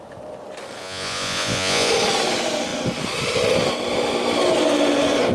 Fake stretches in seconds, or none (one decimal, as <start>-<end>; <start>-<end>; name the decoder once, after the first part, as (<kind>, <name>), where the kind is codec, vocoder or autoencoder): 0.8-1.9 (vocoder, Vocos)